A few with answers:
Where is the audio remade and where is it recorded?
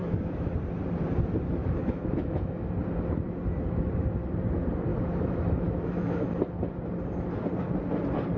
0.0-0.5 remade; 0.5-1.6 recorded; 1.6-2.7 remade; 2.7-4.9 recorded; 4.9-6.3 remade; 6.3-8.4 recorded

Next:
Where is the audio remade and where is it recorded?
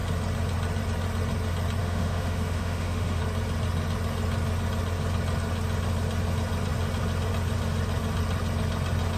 0.0-1.8 recorded; 1.8-3.2 remade; 3.2-9.2 recorded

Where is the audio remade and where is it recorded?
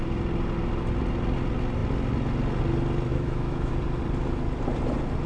0.0-3.1 recorded; 3.1-3.7 remade; 3.7-5.3 recorded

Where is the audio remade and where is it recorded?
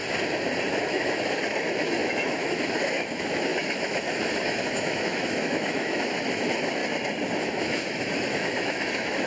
0.0-0.8 recorded; 0.8-6.8 remade; 6.8-7.4 recorded; 7.4-9.3 remade